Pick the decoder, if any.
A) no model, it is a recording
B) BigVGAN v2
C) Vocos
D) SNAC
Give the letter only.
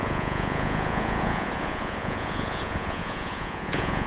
C